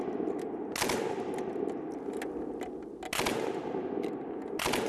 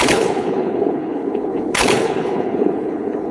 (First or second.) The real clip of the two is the first